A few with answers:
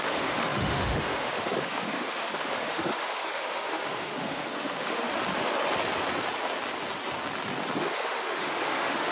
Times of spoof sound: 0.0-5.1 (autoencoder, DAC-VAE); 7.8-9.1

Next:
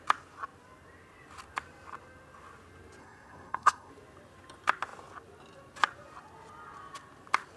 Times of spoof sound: 3.0-3.9 (codec, SNAC)

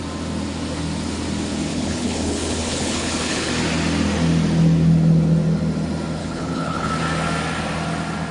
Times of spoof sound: 1.7-3.5 (codec, HILCodec); 6.2-6.9

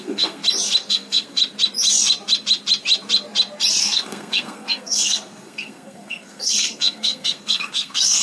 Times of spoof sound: 0.0-0.4 (codec, SNAC); 0.9-1.4; 3.8-8.2